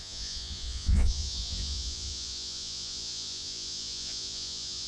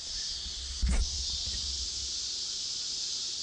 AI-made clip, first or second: first